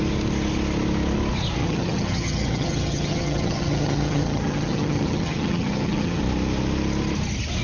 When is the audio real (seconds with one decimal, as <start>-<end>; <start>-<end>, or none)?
0.0-1.6; 6.2-7.6